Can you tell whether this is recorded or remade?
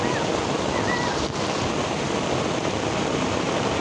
recorded